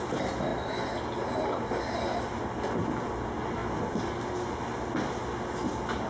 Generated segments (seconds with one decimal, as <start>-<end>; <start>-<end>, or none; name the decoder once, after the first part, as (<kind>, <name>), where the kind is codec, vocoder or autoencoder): none